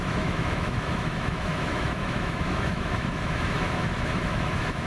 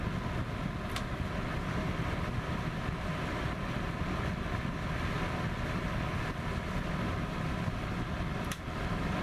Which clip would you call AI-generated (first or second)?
first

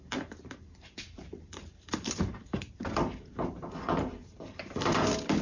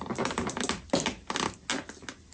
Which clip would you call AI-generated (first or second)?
first